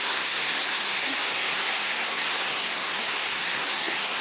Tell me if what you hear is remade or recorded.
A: remade